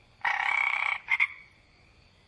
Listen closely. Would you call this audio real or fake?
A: fake